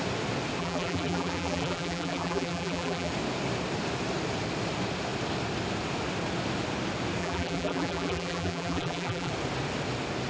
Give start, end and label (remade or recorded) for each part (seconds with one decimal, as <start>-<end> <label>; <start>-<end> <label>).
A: 0.0-0.6 recorded; 0.6-3.1 remade; 3.1-7.2 recorded; 7.2-9.3 remade; 9.3-10.3 recorded